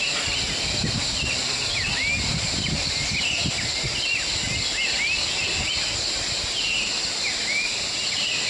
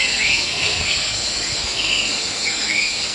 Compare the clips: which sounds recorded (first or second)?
first